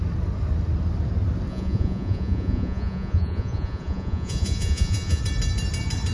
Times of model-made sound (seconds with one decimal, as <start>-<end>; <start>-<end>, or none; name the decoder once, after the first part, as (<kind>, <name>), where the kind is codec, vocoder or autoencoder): 1.5-5.2 (vocoder, Vocos)